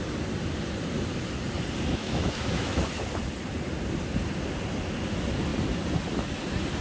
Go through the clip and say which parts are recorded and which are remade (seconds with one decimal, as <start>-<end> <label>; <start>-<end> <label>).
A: 0.0-1.9 recorded; 1.9-2.9 remade; 2.9-6.8 recorded